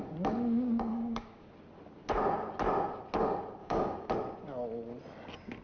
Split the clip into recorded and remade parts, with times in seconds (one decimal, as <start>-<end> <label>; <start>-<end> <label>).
0.0-0.9 recorded; 0.9-1.5 remade; 1.5-3.6 recorded; 3.6-4.1 remade; 4.1-5.6 recorded